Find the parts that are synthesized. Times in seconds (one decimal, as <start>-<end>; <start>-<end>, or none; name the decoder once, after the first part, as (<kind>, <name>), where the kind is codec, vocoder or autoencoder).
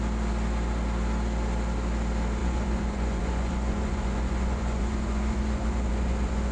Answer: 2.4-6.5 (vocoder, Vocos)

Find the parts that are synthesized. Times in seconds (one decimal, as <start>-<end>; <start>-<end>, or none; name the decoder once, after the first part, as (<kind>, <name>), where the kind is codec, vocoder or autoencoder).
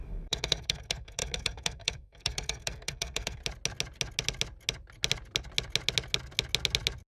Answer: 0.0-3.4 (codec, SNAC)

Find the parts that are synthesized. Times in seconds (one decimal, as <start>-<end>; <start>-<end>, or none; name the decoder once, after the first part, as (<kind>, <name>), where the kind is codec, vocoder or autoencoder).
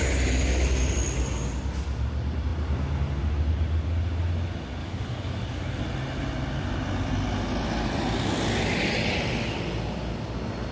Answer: 4.8-5.8 (codec, DAC)